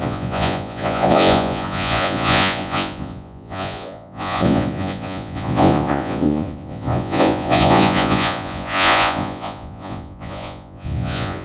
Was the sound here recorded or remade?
remade